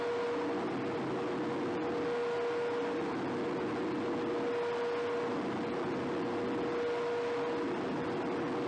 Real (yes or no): yes